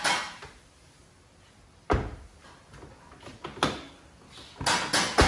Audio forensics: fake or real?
real